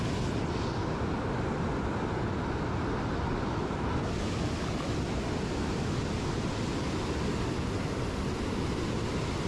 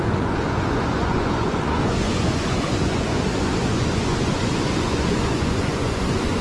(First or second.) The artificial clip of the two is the second